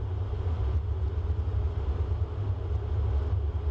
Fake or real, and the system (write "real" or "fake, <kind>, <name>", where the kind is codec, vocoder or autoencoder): real